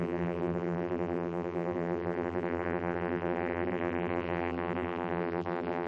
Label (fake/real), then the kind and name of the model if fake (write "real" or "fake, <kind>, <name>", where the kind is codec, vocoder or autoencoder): fake, vocoder, BigVGAN v2